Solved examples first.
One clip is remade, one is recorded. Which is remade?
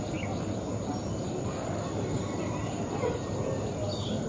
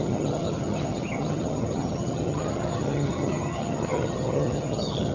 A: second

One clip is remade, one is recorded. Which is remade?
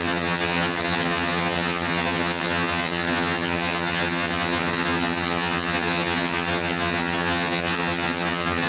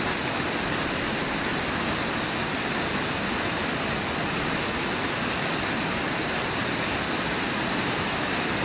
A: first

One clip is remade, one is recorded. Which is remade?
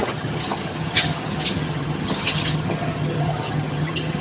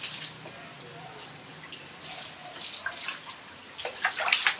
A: first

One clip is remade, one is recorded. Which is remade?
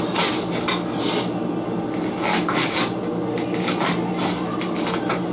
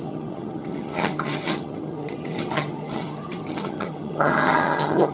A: second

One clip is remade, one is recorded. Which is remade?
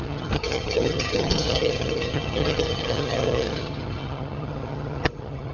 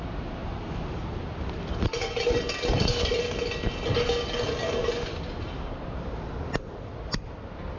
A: first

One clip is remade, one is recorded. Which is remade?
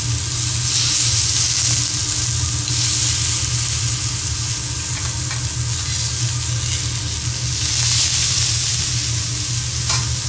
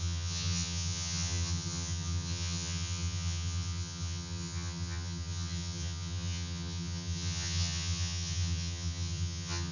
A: second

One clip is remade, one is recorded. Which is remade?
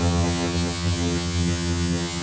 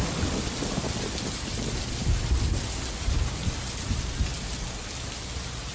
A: first